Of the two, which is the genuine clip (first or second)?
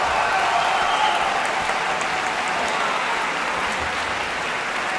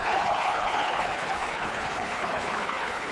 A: first